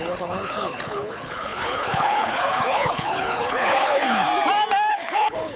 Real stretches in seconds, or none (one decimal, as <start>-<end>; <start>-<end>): 4.3-4.9